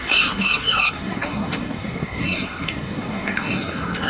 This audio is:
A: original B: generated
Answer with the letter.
B